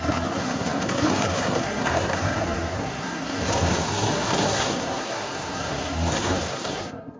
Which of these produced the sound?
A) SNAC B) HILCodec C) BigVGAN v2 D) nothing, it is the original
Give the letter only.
A